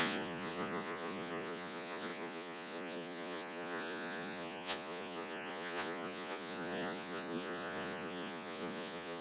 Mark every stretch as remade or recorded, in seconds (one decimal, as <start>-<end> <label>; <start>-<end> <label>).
0.0-9.2 remade